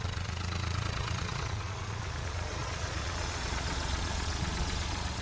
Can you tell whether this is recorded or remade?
remade